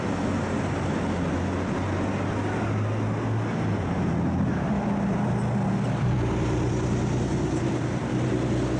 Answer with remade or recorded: recorded